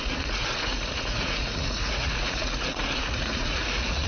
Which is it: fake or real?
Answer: fake